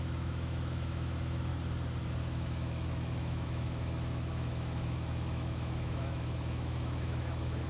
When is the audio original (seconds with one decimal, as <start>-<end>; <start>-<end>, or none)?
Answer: 1.5-2.2